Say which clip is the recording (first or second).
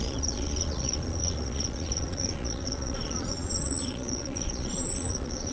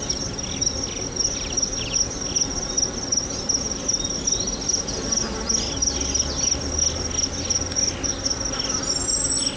second